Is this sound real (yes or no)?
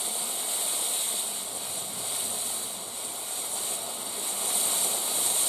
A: yes